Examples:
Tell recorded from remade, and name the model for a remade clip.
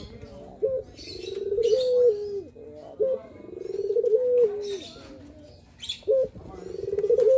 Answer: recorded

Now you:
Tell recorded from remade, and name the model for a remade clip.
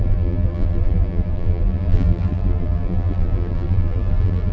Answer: remade, vocoder, BigVGAN v2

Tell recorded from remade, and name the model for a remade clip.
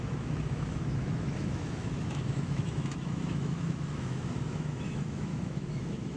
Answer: remade, autoencoder, DAC-VAE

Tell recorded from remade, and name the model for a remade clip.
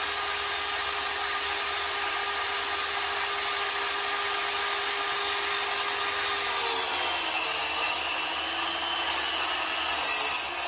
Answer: recorded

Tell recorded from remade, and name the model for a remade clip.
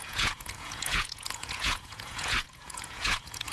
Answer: remade, vocoder, Vocos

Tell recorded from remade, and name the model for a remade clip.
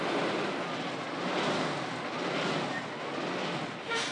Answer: recorded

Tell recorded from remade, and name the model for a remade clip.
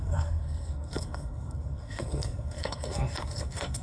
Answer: remade, codec, SNAC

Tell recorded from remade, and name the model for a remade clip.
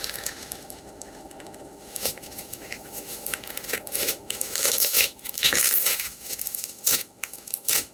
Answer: remade, autoencoder, DAC-VAE